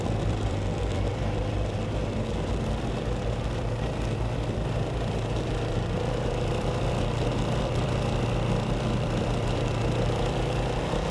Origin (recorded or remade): remade